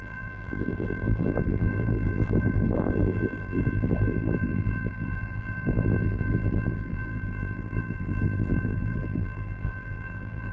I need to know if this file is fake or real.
fake